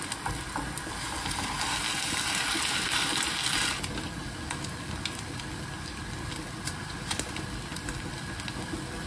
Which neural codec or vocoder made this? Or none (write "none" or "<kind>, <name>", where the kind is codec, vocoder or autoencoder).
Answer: none